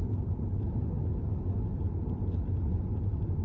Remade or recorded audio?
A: recorded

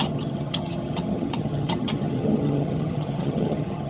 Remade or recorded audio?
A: remade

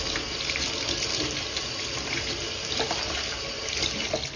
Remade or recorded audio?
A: recorded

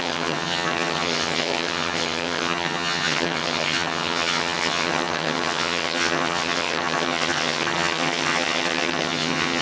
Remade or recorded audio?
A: remade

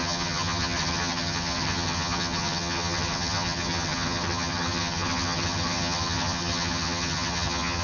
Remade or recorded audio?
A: remade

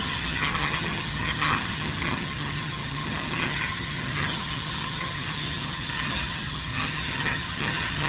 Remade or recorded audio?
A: remade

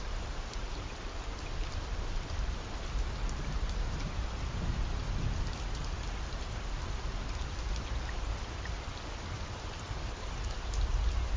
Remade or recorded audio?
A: recorded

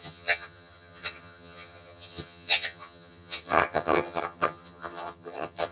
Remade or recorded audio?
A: remade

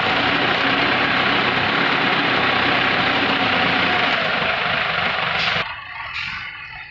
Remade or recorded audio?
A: recorded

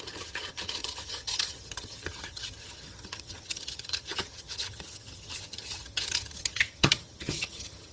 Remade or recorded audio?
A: remade